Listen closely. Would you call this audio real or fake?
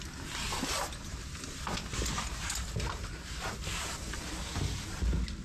real